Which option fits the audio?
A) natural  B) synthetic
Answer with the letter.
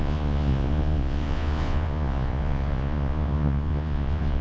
B